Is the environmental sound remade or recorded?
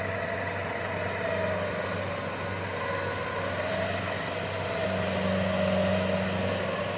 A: recorded